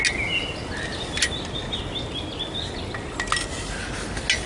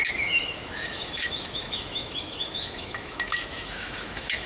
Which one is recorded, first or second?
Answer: first